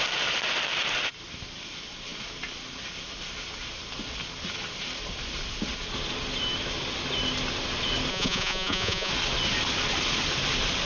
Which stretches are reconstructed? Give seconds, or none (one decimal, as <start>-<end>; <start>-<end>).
8.1-9.1